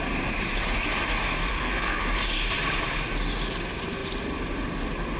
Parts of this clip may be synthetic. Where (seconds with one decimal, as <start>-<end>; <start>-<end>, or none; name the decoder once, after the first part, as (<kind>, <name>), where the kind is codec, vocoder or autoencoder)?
1.5-2.0 (codec, SNAC)